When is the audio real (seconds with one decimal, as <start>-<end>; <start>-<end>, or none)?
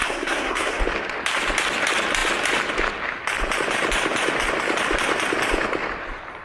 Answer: 0.8-6.4